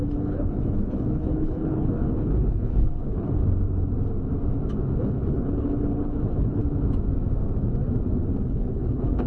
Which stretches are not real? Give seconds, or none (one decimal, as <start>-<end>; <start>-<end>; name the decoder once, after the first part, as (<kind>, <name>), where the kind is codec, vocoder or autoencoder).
0.0-3.4 (codec, HILCodec); 5.0-6.6; 8.3-9.3